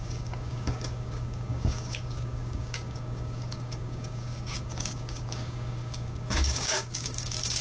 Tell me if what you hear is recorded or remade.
remade